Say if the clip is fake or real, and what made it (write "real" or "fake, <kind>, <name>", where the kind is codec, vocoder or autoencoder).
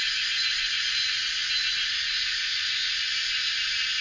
real